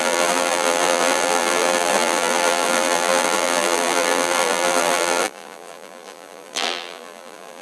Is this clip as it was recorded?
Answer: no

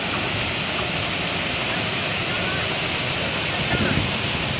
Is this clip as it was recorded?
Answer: yes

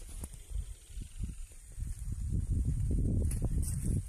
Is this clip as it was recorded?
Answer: yes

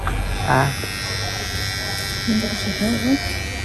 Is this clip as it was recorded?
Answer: yes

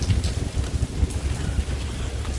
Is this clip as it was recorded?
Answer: yes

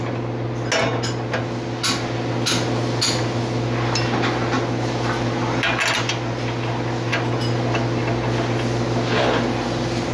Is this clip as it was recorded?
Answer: yes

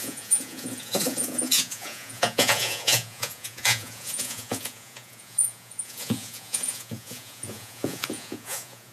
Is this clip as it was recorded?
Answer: no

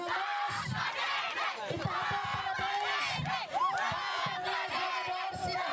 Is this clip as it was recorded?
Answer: yes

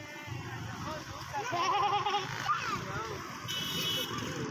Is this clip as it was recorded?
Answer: yes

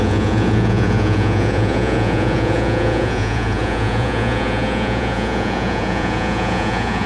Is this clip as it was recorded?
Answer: no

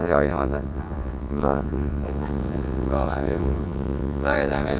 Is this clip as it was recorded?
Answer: no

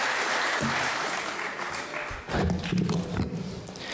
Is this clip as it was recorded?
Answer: yes